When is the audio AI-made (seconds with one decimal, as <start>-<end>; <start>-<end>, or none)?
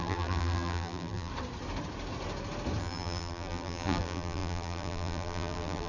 0.0-1.3; 2.8-5.9